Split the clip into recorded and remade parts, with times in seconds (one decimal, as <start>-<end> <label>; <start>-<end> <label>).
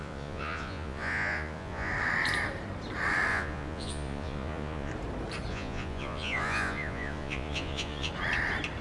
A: 0.0-1.9 remade; 1.9-3.3 recorded; 3.3-4.9 remade; 4.9-5.5 recorded; 5.5-8.1 remade; 8.1-8.8 recorded